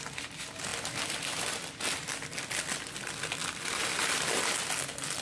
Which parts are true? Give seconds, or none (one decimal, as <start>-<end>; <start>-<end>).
0.0-5.2